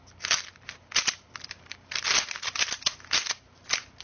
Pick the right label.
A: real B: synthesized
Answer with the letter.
A